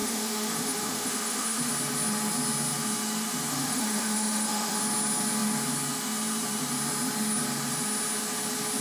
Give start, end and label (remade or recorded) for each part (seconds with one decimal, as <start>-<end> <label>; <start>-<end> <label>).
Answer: 0.0-1.7 remade; 1.7-3.5 recorded; 3.5-4.8 remade; 4.8-8.8 recorded